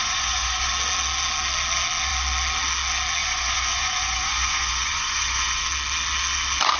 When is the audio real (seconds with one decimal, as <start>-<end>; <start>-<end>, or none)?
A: 0.7-3.2; 5.6-6.8